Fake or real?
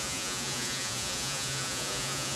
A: fake